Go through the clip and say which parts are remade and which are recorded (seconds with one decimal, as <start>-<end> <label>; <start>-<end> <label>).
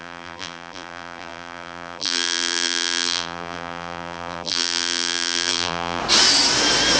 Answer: 0.0-6.0 remade; 6.0-7.0 recorded